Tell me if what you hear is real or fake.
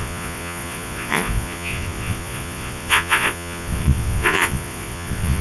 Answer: fake